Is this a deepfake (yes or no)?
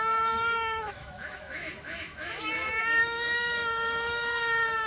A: yes